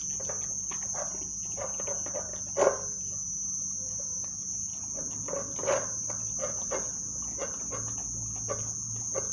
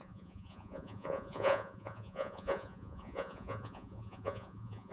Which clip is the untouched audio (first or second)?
first